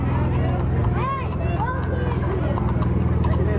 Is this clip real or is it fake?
real